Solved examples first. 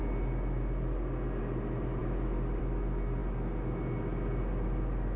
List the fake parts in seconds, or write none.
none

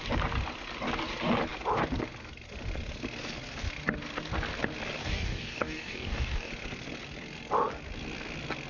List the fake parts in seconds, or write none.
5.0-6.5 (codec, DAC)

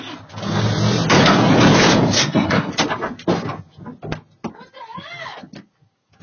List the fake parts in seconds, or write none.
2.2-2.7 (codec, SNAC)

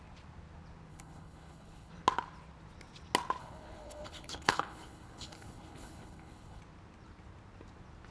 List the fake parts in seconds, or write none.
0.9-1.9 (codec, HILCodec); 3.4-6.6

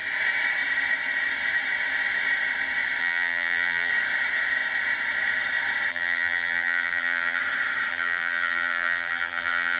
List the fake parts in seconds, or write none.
3.0-3.9 (vocoder, BigVGAN v2); 5.9-7.4; 7.9-9.8